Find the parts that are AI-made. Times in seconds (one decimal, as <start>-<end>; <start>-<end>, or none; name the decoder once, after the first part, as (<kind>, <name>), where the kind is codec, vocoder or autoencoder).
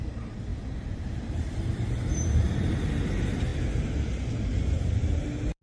0.0-5.6 (vocoder, BigVGAN v2)